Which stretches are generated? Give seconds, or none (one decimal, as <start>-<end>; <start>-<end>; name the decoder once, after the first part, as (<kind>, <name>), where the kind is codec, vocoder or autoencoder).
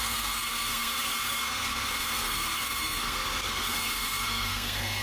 0.0-5.0 (codec, SNAC)